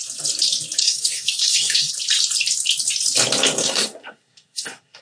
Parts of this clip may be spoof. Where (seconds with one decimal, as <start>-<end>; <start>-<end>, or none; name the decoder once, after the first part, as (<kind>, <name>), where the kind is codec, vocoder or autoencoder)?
0.8-1.9 (codec, SNAC); 3.6-5.0